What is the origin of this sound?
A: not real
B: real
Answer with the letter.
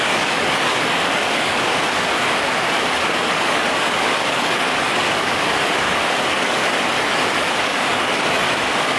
A